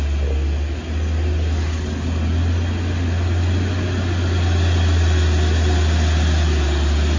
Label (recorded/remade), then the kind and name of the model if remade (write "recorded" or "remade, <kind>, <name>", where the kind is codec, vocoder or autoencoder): recorded